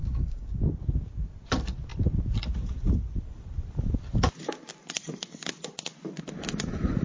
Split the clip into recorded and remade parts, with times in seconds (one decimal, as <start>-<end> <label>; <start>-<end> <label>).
0.0-0.6 remade; 0.6-7.0 recorded